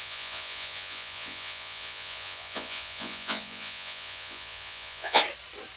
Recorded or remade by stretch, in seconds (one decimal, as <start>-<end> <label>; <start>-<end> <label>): 0.0-5.2 remade; 5.2-5.8 recorded